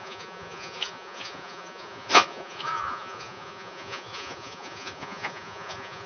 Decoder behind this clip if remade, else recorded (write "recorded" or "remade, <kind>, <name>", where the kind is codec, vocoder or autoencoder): remade, vocoder, Vocos